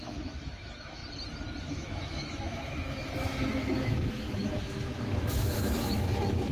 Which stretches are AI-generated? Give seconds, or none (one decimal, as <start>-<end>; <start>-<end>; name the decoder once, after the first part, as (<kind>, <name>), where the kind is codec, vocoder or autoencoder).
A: 0.0-1.0 (autoencoder, DAC-VAE); 1.6-6.5